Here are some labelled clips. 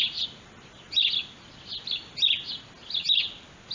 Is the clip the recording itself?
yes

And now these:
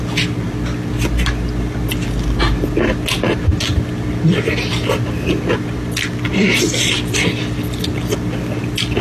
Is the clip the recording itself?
yes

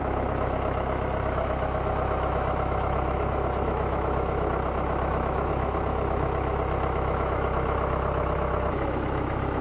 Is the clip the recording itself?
no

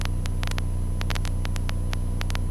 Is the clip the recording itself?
yes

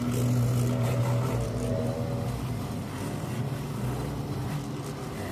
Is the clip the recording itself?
yes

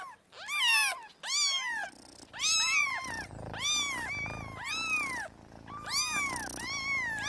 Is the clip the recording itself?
yes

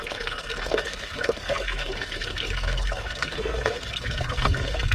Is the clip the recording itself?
no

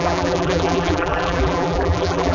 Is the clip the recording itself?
no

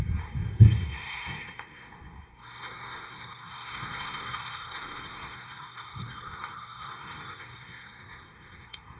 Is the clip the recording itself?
no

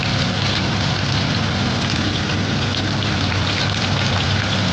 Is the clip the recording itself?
yes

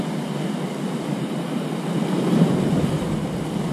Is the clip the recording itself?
yes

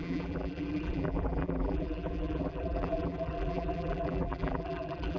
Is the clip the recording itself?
no